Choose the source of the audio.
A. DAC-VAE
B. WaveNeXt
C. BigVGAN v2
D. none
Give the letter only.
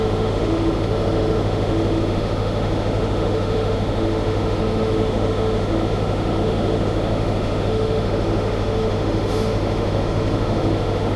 A